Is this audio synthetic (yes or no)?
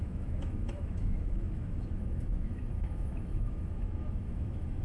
yes